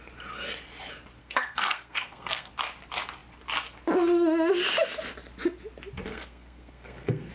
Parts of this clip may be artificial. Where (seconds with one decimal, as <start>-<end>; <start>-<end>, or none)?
1.2-2.5; 6.1-7.3